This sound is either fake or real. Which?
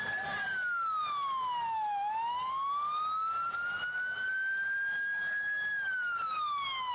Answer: real